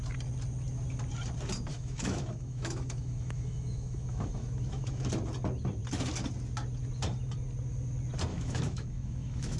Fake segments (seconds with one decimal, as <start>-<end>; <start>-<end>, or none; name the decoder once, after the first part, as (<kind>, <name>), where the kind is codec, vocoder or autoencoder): 1.7-5.1 (autoencoder, DAC-VAE); 8.3-9.6